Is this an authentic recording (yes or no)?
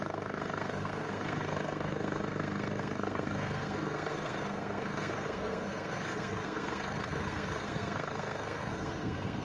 no